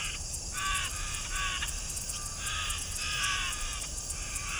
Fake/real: fake